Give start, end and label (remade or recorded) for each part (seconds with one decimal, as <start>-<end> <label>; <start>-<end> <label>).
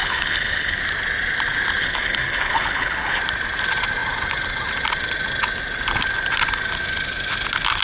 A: 0.0-0.8 remade; 0.8-1.8 recorded; 1.8-3.2 remade; 3.2-7.8 recorded